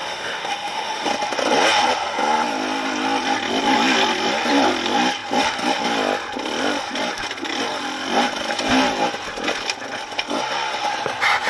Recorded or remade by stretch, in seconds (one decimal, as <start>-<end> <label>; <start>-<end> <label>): 0.0-1.1 remade; 1.1-11.5 recorded